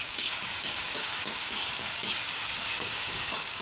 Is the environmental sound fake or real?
fake